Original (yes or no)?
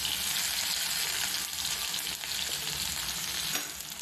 yes